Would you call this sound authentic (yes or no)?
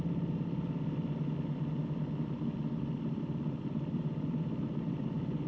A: yes